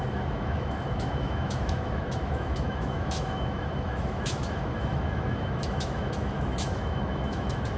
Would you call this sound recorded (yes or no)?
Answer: no